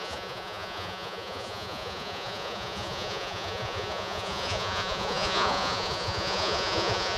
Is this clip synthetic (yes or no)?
yes